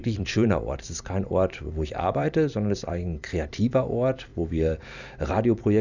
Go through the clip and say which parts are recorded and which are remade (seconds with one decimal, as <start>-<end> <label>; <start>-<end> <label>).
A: 0.0-3.5 remade; 3.5-4.3 recorded; 4.3-4.8 remade; 4.8-5.8 recorded